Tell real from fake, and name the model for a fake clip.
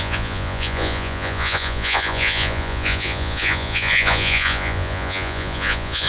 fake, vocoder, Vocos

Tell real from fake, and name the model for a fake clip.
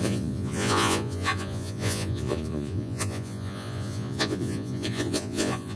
fake, vocoder, Vocos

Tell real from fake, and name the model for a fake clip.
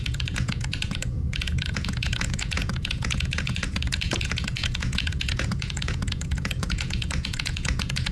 fake, vocoder, Vocos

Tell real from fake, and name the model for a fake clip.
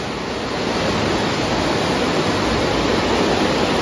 real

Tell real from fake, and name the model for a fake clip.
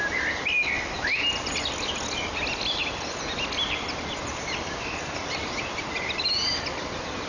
real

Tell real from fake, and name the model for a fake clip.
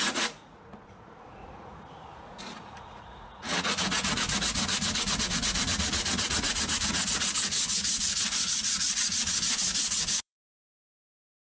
fake, vocoder, Vocos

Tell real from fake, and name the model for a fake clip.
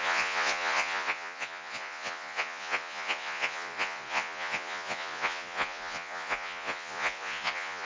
fake, vocoder, Vocos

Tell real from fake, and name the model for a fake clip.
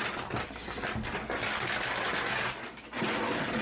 real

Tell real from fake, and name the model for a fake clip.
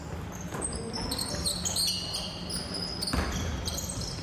real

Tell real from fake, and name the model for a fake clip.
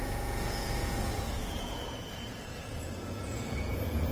fake, vocoder, Vocos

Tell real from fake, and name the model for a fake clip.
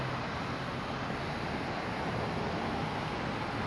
real